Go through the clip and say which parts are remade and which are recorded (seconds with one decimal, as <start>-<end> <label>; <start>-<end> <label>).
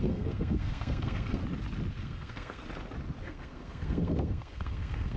0.0-1.4 remade; 1.4-2.0 recorded; 2.0-2.6 remade; 2.6-3.2 recorded; 3.2-5.2 remade